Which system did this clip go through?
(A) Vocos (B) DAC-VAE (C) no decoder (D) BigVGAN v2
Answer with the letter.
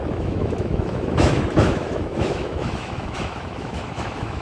B